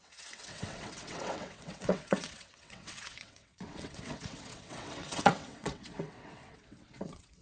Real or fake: fake